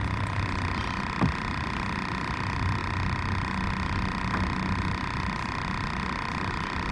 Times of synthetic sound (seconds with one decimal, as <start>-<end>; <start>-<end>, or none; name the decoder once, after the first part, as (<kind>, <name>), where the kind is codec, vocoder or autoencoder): none